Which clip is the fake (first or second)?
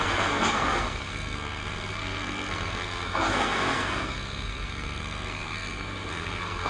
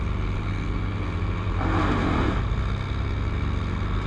first